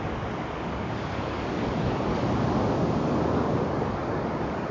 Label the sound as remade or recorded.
remade